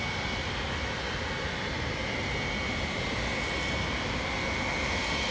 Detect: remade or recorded recorded